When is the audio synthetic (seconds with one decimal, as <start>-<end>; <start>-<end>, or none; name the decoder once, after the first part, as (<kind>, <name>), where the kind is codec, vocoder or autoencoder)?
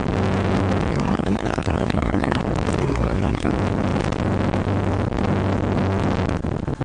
0.9-2.4 (codec, SNAC); 2.8-3.5